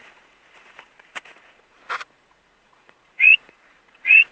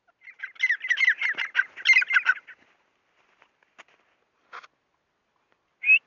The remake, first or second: first